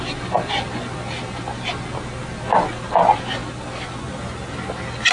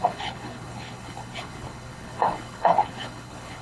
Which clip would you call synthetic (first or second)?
second